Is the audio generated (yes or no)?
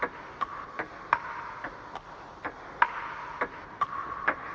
no